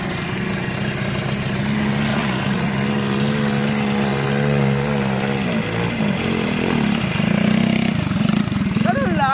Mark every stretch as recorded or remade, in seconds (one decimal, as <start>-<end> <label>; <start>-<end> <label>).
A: 0.0-2.1 recorded; 2.1-2.7 remade; 2.7-9.3 recorded